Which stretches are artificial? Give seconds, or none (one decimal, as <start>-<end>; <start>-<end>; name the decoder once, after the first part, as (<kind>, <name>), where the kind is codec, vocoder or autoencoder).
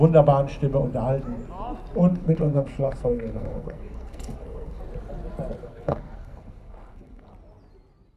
2.1-4.8 (codec, SNAC); 5.6-7.3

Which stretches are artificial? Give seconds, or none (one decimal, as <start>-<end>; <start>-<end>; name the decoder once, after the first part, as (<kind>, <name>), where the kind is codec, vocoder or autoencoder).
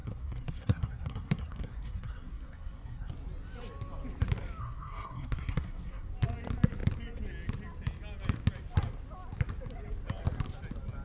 0.0-3.1 (codec, SNAC); 4.6-6.1